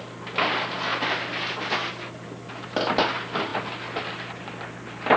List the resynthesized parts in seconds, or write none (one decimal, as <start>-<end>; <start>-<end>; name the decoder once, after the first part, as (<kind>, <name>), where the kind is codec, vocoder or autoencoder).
none